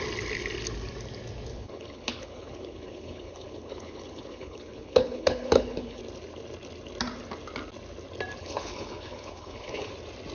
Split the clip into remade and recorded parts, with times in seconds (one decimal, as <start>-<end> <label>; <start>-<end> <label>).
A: 0.0-1.5 recorded; 1.5-6.0 remade; 6.0-8.4 recorded; 8.4-9.9 remade; 9.9-10.3 recorded